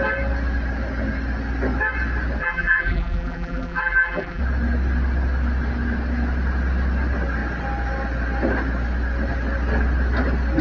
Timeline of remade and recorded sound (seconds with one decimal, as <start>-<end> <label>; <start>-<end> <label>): 0.0-2.4 recorded; 2.4-4.4 remade; 4.4-10.6 recorded